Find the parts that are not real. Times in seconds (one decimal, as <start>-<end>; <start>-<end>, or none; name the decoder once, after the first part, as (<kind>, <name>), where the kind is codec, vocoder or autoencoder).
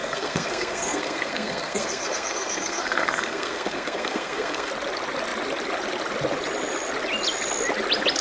0.0-4.7 (codec, SNAC)